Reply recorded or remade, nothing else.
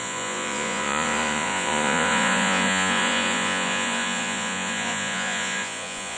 remade